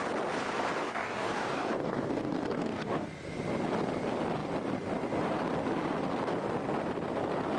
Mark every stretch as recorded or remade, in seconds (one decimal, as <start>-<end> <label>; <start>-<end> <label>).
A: 0.0-0.8 recorded; 0.8-3.1 remade; 3.1-7.6 recorded